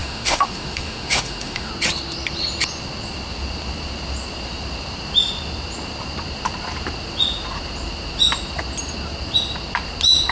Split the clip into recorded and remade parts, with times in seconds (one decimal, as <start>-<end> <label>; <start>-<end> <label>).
0.0-1.7 remade; 1.7-10.3 recorded